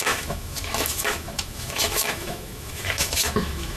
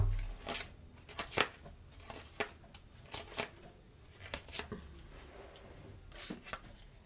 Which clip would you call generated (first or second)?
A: first